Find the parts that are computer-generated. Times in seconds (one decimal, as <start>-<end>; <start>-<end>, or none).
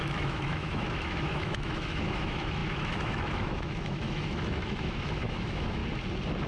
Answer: 0.0-5.8